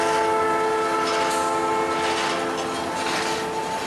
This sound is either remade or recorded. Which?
recorded